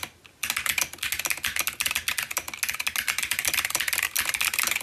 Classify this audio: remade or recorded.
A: recorded